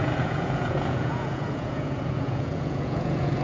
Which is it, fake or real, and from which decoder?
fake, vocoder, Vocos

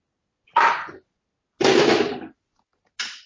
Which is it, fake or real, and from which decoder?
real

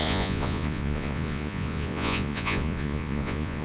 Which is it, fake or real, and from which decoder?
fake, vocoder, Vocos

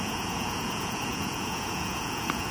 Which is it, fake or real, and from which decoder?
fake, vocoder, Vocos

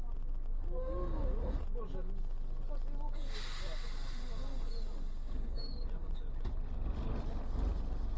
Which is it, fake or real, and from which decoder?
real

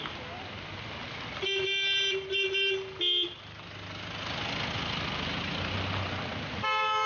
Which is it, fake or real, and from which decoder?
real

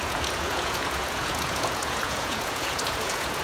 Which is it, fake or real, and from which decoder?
fake, vocoder, Vocos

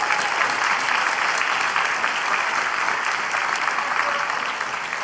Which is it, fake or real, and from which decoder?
real